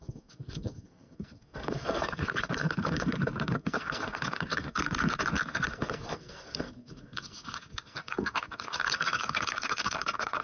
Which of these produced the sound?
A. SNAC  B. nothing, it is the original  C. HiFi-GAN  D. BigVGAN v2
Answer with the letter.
A